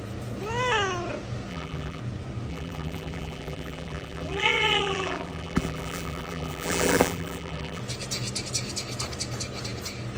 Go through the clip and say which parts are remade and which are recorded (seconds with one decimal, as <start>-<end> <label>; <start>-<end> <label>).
0.0-1.5 recorded; 1.5-2.0 remade; 2.0-2.5 recorded; 2.5-7.8 remade; 7.8-10.2 recorded